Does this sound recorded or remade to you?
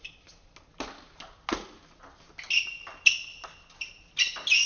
recorded